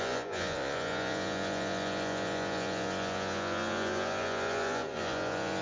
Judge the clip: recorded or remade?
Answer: remade